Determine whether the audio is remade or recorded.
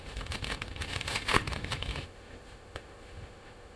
remade